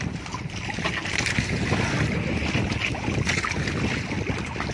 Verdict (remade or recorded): recorded